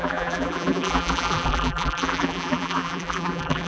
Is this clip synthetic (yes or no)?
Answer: yes